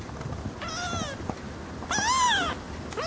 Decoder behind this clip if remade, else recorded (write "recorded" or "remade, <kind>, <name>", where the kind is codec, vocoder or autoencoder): recorded